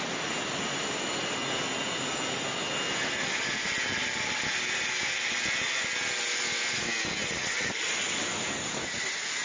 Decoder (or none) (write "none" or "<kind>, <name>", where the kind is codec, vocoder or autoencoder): none